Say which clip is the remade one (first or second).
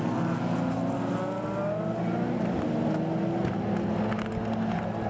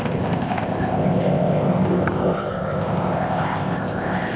second